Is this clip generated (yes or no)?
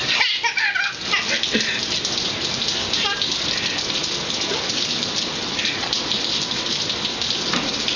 no